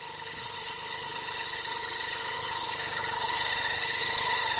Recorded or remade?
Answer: remade